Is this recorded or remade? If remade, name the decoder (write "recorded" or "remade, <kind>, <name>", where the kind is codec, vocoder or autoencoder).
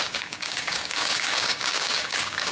remade, codec, DAC